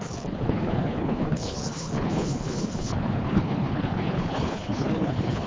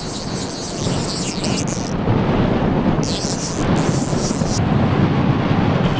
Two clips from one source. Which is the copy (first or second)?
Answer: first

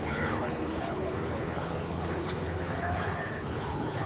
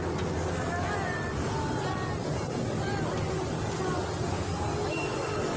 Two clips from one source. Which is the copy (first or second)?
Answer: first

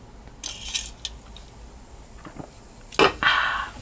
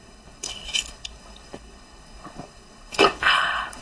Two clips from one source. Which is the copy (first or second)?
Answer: second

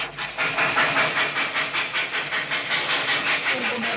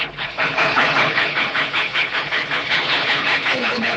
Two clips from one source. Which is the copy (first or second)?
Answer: second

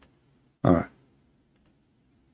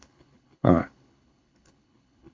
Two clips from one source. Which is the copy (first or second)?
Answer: second